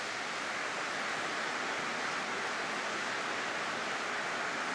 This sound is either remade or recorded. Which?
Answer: recorded